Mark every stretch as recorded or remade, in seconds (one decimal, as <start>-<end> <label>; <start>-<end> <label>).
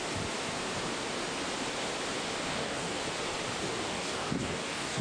0.0-2.5 recorded; 2.5-3.0 remade; 3.0-3.6 recorded; 3.6-5.0 remade